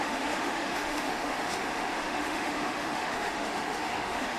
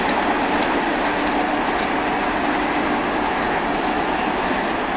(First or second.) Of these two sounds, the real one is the second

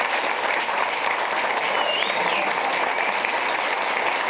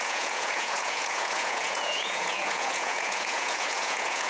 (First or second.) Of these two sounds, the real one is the first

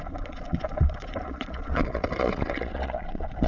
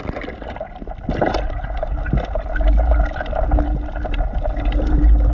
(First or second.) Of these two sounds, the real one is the second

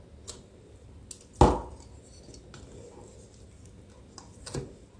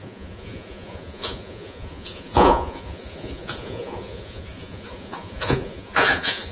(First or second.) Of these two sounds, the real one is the first